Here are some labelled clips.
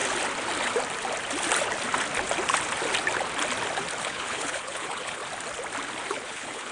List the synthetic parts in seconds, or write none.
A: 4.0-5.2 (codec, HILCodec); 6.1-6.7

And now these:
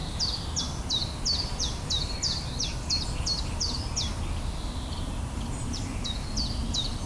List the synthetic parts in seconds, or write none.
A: none

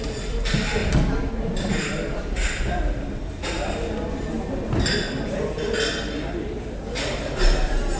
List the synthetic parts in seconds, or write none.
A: none

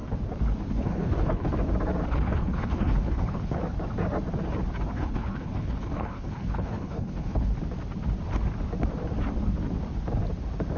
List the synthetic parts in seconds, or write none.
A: 0.7-1.5 (codec, HILCodec); 2.1-3.6; 4.9-7.5

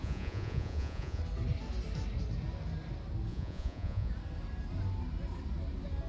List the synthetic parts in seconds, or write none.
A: 0.0-1.2 (vocoder, Vocos); 3.3-4.1